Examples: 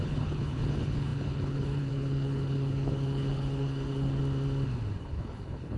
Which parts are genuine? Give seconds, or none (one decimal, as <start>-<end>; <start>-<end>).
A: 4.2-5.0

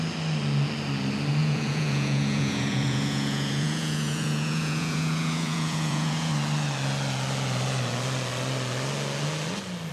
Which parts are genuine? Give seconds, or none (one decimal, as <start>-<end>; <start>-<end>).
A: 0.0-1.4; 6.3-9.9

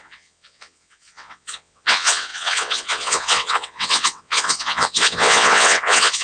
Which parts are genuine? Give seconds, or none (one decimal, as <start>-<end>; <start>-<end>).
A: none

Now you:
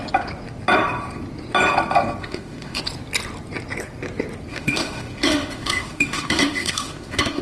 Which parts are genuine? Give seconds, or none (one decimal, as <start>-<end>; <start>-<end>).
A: 0.0-2.2; 2.8-4.5

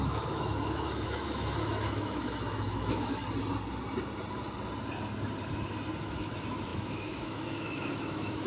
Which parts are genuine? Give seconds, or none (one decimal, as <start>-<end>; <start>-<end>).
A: 3.2-6.0

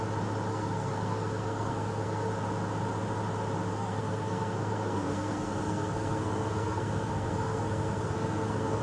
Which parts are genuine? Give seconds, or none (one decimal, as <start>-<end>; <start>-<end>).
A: 0.0-0.5; 2.3-3.7

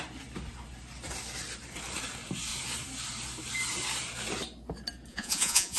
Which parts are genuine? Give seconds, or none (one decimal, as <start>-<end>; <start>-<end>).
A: 0.0-5.1